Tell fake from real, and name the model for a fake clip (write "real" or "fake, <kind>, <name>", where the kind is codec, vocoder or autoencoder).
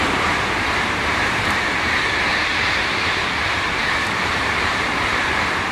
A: fake, vocoder, BigVGAN v2